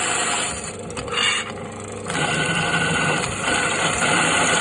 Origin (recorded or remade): recorded